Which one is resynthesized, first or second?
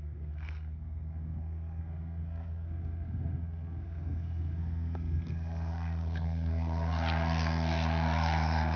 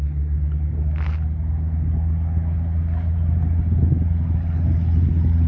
first